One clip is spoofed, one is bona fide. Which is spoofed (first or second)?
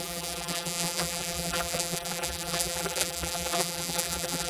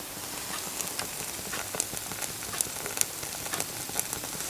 first